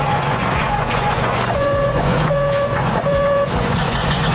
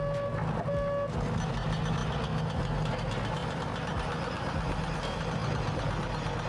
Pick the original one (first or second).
second